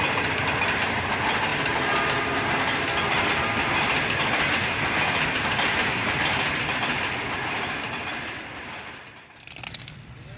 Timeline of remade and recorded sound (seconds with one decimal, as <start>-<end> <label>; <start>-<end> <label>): 0.0-10.4 recorded